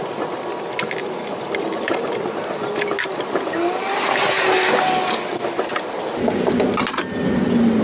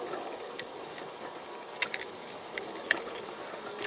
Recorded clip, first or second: first